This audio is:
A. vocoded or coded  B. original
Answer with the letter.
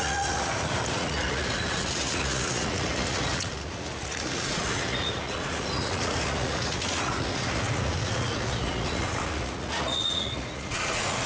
A